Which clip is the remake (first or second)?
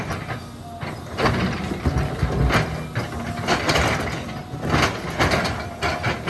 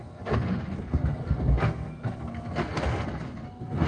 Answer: second